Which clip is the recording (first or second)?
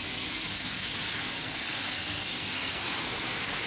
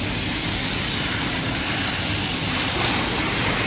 second